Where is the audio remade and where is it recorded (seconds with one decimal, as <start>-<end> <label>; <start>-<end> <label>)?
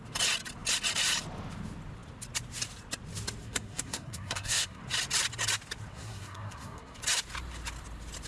0.0-3.4 recorded; 3.4-4.8 remade; 4.8-5.9 recorded; 5.9-7.0 remade; 7.0-8.3 recorded